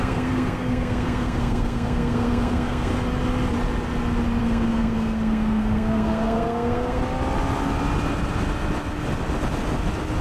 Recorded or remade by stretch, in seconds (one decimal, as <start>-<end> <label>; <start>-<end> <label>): 0.0-2.9 remade; 2.9-4.4 recorded; 4.4-7.0 remade; 7.0-10.2 recorded

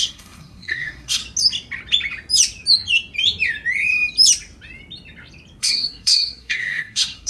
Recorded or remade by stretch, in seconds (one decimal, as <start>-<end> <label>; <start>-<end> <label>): 0.0-1.2 remade; 1.2-5.6 recorded; 5.6-7.3 remade